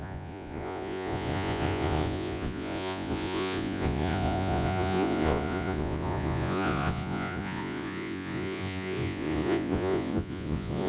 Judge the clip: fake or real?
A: fake